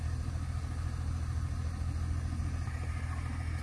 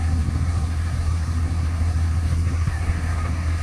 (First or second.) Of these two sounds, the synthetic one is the second